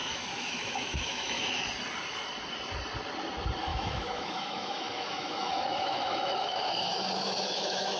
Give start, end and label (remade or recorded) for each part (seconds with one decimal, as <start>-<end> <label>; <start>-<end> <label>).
0.0-1.7 remade; 1.7-3.7 recorded; 3.7-8.0 remade